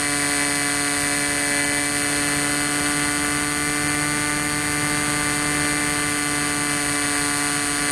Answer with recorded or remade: recorded